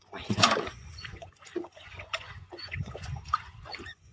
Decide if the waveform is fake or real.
fake